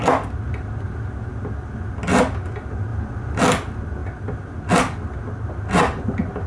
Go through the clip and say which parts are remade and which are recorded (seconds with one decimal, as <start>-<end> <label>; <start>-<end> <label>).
0.0-6.5 recorded